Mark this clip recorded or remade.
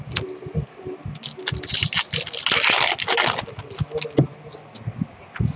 recorded